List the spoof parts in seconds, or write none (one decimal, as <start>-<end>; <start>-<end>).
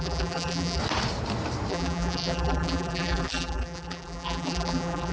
0.0-0.8; 1.7-5.1